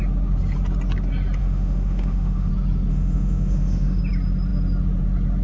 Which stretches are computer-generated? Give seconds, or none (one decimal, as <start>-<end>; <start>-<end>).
1.4-2.5; 2.9-4.0